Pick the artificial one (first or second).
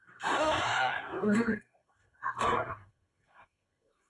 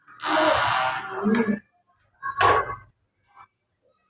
first